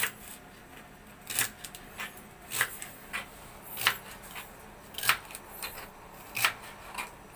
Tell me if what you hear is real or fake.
real